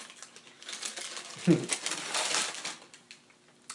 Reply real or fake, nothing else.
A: real